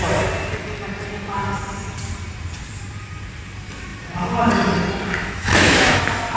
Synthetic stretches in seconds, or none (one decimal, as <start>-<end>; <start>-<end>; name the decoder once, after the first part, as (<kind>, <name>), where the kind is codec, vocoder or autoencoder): 5.2-6.0 (autoencoder, DAC-VAE)